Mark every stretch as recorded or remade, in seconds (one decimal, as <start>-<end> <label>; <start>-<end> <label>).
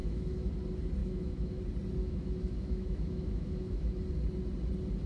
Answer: 0.0-0.5 remade; 0.5-1.0 recorded; 1.0-1.6 remade; 1.6-2.0 recorded; 2.0-4.0 remade; 4.0-5.1 recorded